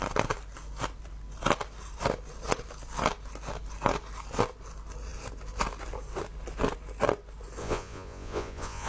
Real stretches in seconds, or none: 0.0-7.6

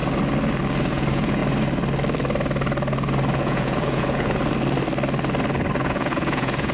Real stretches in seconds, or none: 0.0-0.9; 1.4-3.4; 4.4-5.8

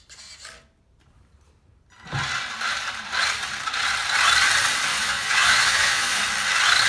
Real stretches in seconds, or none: 0.0-4.9; 6.2-6.9

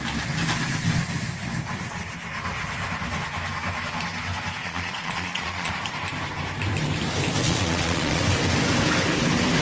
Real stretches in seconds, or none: 0.0-4.6; 5.7-7.4; 8.2-9.6

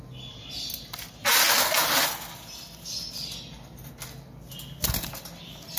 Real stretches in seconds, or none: 0.0-5.8

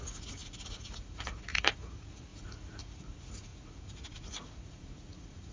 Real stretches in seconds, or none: none